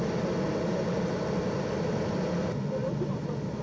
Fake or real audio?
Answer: real